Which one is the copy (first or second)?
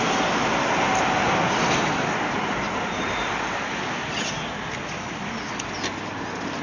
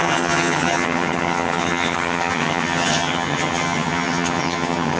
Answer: second